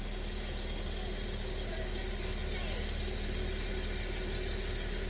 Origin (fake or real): real